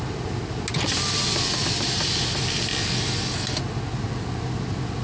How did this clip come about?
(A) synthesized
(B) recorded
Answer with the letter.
B